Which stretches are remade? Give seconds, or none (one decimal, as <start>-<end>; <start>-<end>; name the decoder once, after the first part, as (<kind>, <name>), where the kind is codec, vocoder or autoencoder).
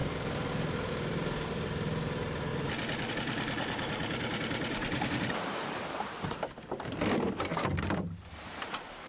0.0-2.5 (vocoder, BigVGAN v2); 3.1-7.5; 8.3-9.1